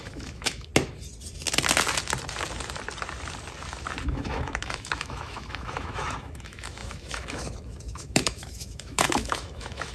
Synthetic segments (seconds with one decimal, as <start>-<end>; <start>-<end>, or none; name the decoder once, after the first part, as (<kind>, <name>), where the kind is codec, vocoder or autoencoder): 0.0-0.7 (autoencoder, DAC-VAE); 4.0-9.9